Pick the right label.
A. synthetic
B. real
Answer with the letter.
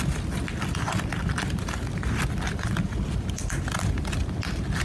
B